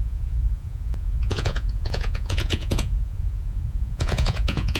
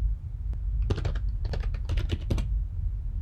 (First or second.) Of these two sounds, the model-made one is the first